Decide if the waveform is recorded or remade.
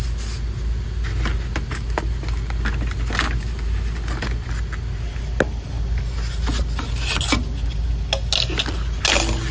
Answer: recorded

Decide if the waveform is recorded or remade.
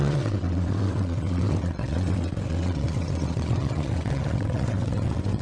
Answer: remade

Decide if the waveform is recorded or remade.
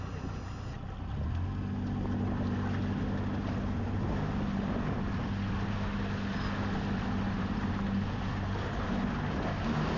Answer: recorded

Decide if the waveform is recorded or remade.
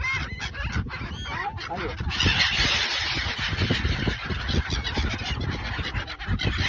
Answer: recorded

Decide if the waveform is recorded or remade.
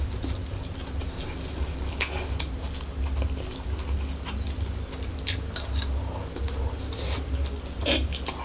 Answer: recorded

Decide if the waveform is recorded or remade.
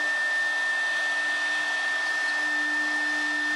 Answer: recorded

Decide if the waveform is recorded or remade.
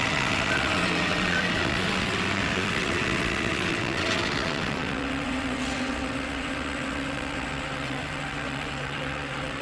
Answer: remade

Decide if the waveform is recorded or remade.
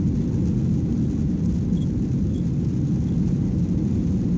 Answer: recorded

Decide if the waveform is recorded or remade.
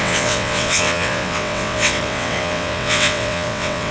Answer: remade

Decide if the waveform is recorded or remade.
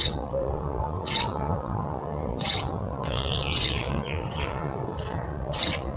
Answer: remade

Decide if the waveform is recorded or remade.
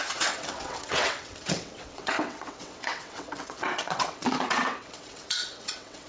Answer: remade